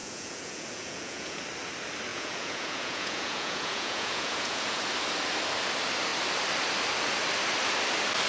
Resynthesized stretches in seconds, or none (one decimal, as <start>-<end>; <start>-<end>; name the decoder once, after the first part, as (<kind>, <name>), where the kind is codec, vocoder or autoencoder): 0.0-1.4 (vocoder, Vocos); 2.1-4.8